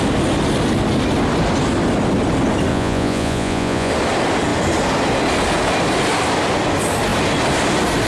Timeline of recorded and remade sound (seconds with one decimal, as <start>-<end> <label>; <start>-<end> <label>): 0.0-2.7 recorded; 2.7-3.9 remade; 3.9-8.1 recorded